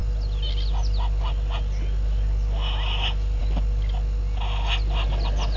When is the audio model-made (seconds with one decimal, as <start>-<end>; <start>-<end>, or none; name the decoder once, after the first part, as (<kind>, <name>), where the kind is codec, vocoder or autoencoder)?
none